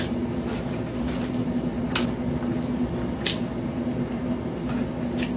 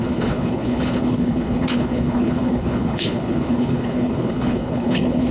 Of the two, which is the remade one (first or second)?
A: second